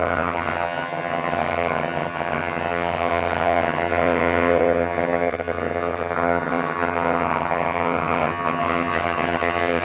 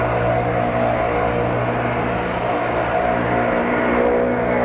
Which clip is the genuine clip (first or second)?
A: second